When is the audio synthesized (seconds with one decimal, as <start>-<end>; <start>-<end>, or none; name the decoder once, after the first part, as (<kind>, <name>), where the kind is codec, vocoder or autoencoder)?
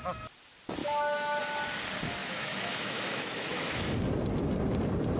0.8-1.4 (autoencoder, DAC-VAE); 2.2-3.9